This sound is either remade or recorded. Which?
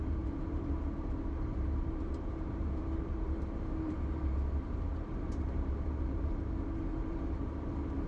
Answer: remade